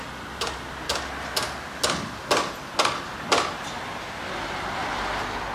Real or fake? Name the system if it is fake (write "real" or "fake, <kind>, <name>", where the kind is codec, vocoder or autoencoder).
real